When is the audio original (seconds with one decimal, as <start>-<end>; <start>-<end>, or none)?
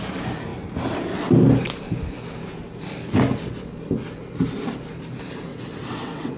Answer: 0.0-5.5